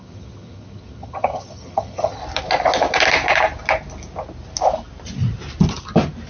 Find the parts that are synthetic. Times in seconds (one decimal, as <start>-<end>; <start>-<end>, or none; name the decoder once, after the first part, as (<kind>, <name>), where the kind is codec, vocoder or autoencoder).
0.0-2.2 (vocoder, HiFi-GAN)